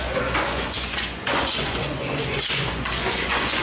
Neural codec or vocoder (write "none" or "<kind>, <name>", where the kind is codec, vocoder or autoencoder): vocoder, Vocos